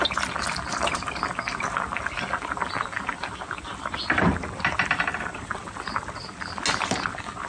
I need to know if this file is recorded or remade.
recorded